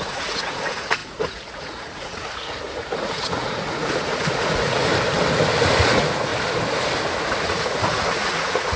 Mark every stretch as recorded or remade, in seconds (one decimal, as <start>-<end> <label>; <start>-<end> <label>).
0.0-4.9 remade; 4.9-5.8 recorded; 5.8-6.3 remade; 6.3-7.4 recorded; 7.4-8.8 remade